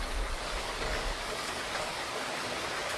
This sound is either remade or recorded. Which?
remade